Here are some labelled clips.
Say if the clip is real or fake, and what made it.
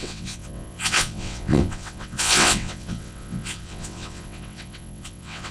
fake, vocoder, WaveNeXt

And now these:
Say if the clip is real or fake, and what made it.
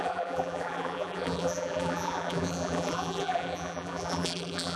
fake, vocoder, BigVGAN v2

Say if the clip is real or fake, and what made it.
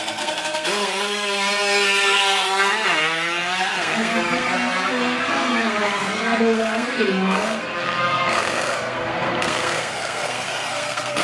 fake, codec, SNAC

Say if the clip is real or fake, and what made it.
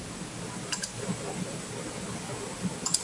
real